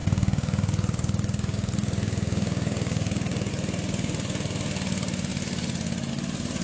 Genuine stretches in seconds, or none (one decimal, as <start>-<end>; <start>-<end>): 3.5-6.6